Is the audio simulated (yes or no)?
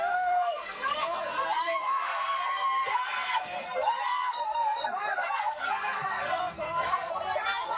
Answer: yes